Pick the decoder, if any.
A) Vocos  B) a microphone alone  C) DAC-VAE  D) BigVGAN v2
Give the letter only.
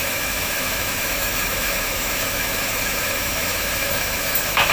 C